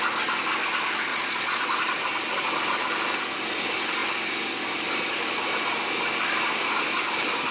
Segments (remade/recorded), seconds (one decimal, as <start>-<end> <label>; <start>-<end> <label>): 0.0-1.1 recorded; 1.1-1.6 remade; 1.6-7.5 recorded